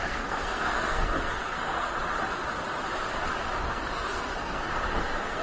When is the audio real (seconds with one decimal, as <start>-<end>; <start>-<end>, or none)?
1.9-3.6